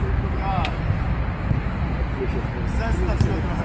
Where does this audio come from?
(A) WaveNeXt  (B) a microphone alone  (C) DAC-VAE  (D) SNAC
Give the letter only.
B